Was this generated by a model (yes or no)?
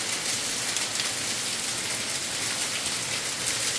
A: no